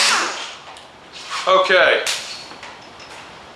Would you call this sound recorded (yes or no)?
yes